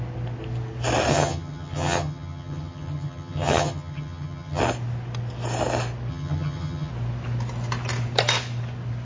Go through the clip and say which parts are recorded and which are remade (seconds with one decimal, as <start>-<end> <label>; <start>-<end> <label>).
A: 0.0-1.1 recorded; 1.1-4.6 remade; 4.6-6.1 recorded; 6.1-6.9 remade; 6.9-9.1 recorded